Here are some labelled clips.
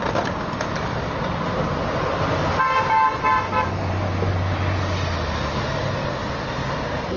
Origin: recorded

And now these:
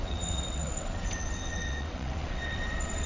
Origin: remade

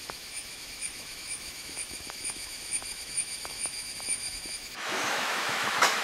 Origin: remade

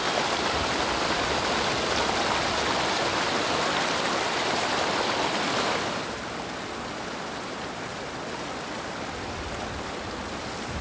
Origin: recorded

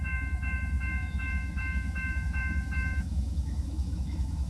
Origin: remade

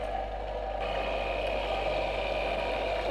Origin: recorded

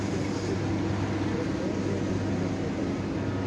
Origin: recorded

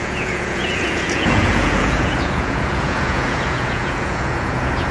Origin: remade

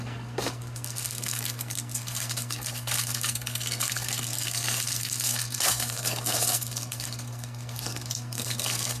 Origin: remade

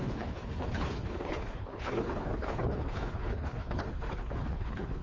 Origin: remade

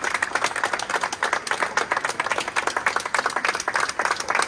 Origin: recorded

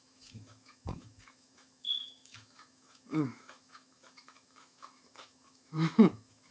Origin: remade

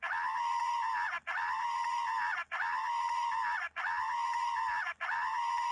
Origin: recorded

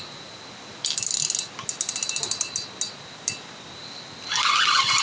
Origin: recorded